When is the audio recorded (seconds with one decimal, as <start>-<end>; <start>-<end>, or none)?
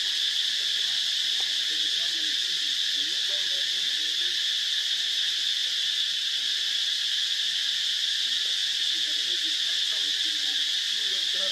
0.0-5.6; 6.7-11.5